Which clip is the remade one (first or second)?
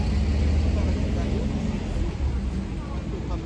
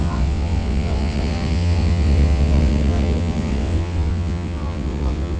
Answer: second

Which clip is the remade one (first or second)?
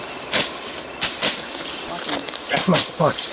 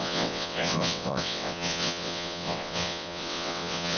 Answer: second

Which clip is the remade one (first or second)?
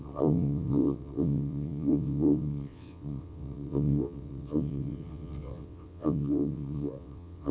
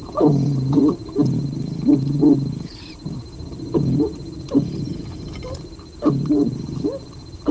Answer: first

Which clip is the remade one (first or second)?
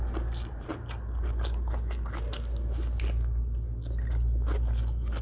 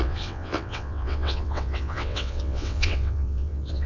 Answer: second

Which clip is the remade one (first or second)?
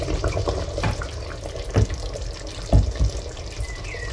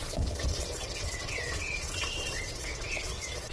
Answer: second